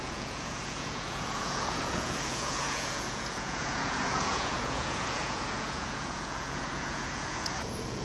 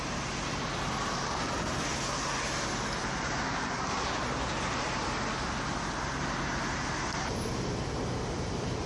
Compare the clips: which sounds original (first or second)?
second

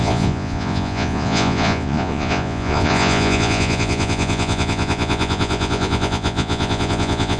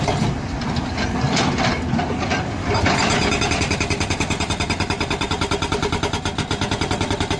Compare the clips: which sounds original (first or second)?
second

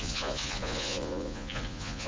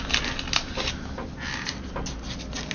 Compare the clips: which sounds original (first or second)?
second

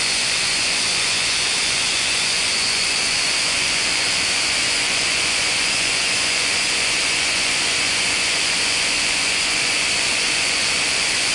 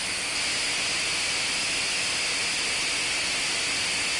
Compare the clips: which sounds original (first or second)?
second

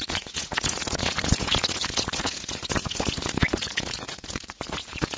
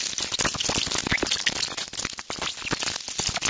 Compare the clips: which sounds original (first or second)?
second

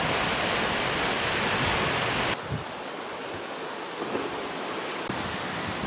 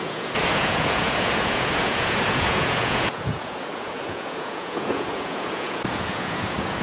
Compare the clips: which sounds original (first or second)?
first